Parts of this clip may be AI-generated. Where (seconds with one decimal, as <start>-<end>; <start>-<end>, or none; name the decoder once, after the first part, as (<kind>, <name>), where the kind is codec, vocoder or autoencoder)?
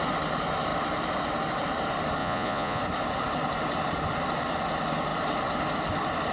2.2-2.8 (vocoder, Vocos)